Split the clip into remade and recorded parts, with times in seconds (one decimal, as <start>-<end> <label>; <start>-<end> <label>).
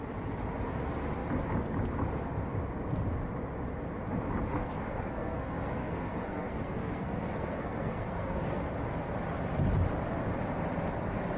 0.0-4.6 recorded; 4.6-8.6 remade; 8.6-11.4 recorded